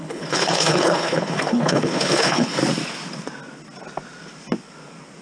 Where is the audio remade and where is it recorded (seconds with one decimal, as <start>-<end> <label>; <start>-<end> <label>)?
0.0-2.6 remade; 2.6-5.2 recorded